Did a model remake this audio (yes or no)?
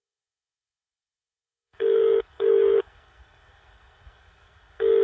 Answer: yes